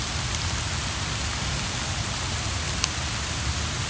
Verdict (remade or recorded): recorded